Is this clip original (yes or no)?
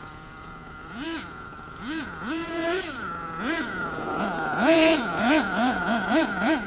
no